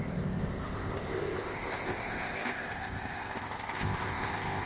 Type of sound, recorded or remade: remade